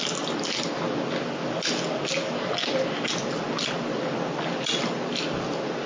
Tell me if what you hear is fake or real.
real